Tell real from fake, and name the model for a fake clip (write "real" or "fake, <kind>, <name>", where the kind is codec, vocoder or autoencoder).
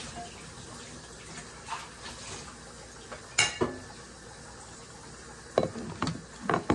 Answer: real